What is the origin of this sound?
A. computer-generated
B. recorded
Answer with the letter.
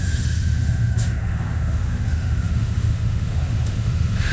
A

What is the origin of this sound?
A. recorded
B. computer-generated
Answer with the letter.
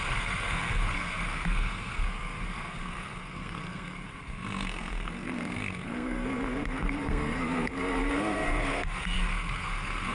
B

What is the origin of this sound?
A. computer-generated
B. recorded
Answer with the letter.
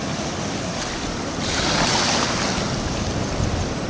B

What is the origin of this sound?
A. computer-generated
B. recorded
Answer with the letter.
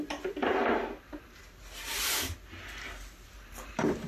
B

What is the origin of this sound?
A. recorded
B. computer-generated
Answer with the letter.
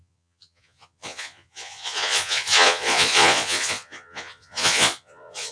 B